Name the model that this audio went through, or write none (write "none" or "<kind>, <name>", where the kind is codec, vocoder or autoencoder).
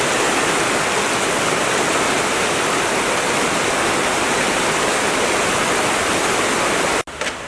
none